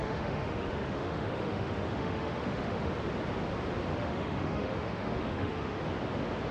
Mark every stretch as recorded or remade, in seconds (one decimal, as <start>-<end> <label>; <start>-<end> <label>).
0.0-2.9 remade; 2.9-3.9 recorded; 3.9-5.8 remade; 5.8-6.5 recorded